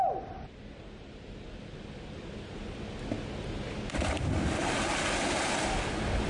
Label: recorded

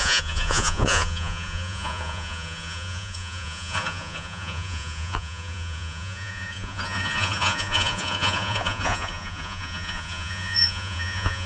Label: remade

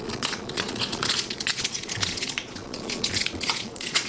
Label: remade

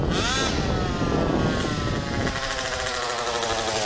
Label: recorded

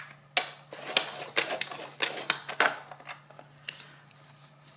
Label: recorded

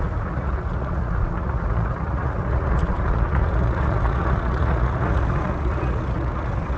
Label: remade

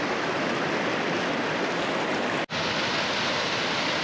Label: recorded